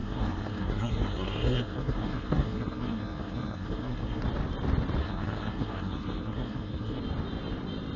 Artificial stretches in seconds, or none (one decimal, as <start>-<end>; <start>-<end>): 0.0-4.2; 5.0-7.0